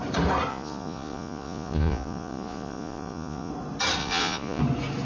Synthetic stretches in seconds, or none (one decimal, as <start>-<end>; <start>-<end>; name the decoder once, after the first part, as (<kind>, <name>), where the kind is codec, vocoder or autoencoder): 0.5-3.5 (vocoder, Vocos); 4.0-4.6